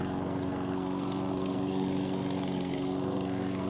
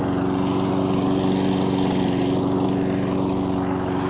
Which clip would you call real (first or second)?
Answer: second